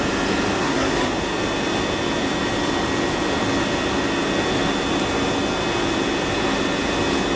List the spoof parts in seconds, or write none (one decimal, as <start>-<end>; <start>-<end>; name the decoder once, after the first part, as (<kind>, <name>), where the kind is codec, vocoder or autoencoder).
0.6-1.1 (codec, SNAC)